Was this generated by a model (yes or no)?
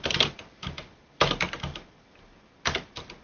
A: no